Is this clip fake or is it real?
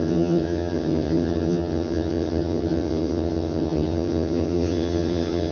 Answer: fake